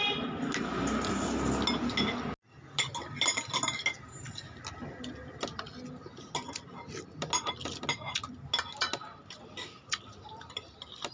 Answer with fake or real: real